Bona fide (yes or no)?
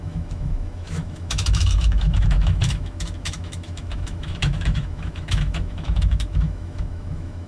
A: no